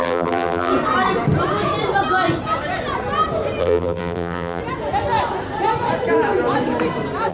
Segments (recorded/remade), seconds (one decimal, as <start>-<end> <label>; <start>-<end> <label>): 0.0-0.7 remade; 0.7-3.6 recorded; 3.6-4.6 remade; 4.6-7.3 recorded